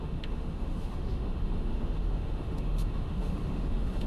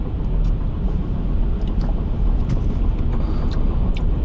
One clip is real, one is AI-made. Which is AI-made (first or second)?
first